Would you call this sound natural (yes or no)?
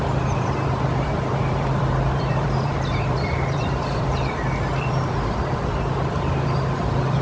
no